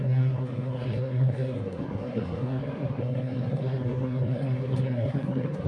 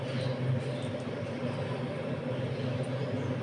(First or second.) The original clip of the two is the second